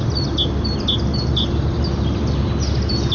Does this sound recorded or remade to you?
recorded